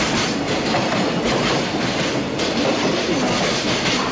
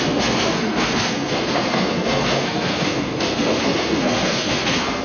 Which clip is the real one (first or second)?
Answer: first